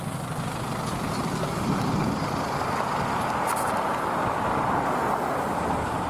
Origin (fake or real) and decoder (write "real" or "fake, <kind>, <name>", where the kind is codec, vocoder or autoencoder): real